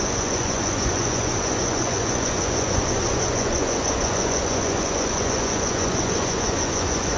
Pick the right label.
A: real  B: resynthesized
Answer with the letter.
B